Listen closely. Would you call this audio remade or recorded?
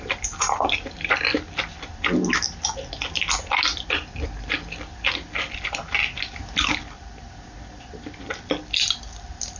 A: recorded